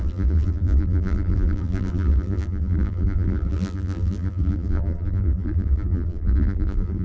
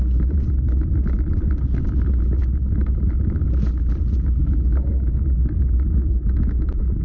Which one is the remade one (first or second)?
first